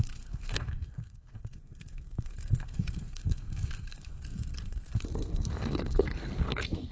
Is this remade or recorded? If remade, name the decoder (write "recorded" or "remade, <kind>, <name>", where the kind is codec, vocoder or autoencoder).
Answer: remade, codec, SNAC